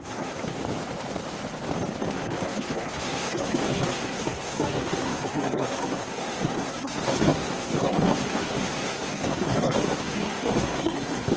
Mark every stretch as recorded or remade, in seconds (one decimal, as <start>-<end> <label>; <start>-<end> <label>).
0.0-0.6 remade; 0.6-2.1 recorded; 2.1-11.4 remade